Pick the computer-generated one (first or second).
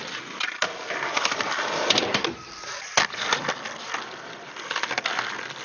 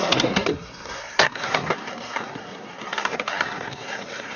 second